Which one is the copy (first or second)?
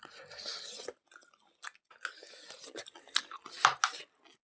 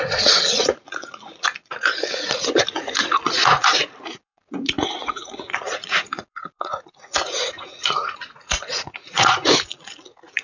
second